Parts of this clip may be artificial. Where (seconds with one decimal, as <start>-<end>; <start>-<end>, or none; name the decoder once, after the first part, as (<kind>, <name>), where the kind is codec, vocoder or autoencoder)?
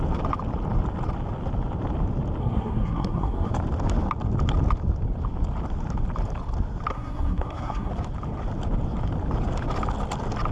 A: 2.4-3.5 (codec, SNAC); 6.9-7.9